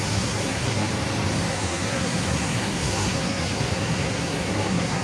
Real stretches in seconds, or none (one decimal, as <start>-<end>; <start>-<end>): 0.9-1.5